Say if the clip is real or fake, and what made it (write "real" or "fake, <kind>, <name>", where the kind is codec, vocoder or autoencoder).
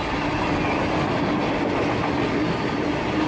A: real